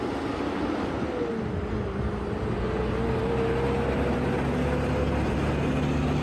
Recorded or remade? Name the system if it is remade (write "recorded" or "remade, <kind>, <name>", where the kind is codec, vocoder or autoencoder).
recorded